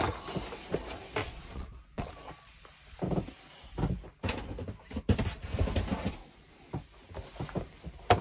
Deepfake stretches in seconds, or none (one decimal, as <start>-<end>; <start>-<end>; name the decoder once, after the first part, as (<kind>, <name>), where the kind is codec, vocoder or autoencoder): 1.2-2.1 (vocoder, Vocos)